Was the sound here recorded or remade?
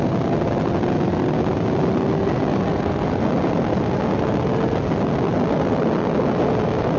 recorded